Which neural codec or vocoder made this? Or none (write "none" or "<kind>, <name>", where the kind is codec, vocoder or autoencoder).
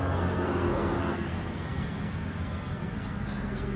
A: codec, SNAC